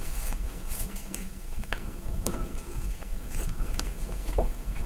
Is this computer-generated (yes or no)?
yes